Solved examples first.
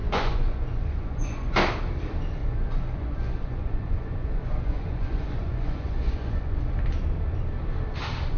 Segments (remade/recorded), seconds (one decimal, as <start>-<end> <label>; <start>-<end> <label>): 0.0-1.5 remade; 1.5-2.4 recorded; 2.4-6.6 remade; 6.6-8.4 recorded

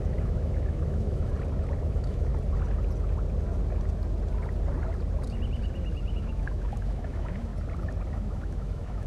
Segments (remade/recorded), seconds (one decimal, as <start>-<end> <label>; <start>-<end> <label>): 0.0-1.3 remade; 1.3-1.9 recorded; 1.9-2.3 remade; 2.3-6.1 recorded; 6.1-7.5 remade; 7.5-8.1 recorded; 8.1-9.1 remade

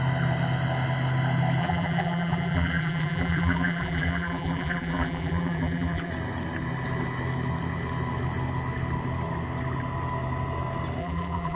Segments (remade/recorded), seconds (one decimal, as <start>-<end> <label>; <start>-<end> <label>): 0.0-1.6 recorded; 1.6-6.1 remade; 6.1-11.0 recorded; 11.0-11.6 remade